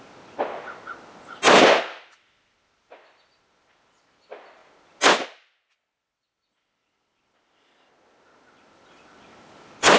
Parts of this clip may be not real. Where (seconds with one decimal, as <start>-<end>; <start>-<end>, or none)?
none